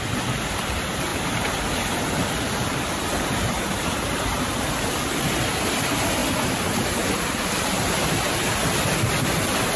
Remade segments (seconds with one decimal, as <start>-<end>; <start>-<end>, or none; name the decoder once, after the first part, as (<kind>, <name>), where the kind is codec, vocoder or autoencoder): 0.0-6.2 (vocoder, BigVGAN v2); 6.8-7.7